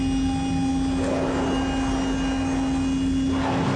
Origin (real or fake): real